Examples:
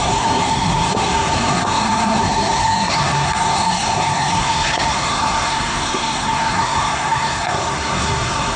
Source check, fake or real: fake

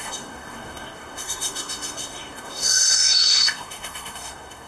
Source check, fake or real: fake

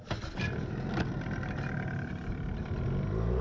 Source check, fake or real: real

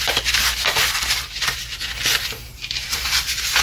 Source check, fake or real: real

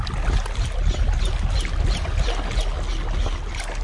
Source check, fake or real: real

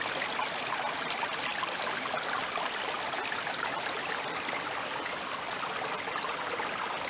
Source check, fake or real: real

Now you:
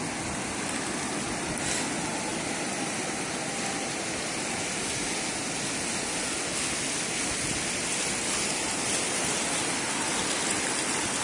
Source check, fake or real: real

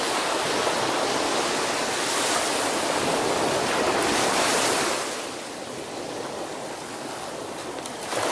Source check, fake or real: real